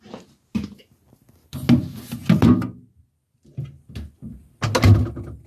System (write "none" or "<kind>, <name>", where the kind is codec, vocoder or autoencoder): none